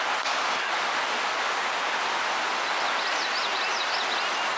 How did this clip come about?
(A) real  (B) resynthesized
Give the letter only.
A